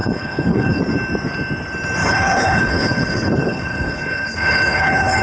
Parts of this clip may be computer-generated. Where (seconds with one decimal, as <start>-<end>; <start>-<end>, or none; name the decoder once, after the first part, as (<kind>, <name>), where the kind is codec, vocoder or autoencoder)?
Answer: 0.0-0.8 (codec, HILCodec); 2.0-5.2